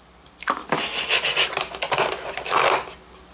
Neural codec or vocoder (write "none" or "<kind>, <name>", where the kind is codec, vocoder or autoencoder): none